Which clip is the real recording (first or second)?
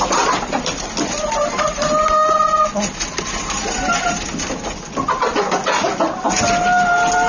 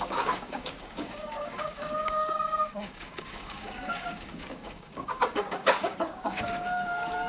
first